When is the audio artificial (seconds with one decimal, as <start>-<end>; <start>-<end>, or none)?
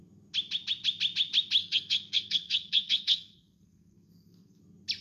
1.6-4.6